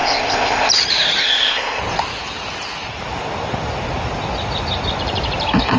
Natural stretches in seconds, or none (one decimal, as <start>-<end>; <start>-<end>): 0.7-1.2; 1.8-5.8

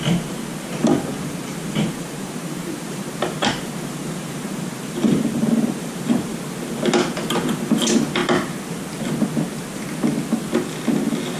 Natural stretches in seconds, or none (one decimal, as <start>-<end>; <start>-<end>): 0.0-1.1; 6.3-11.4

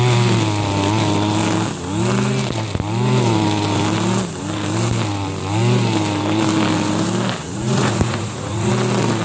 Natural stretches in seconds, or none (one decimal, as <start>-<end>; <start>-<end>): 0.0-7.4; 8.7-9.2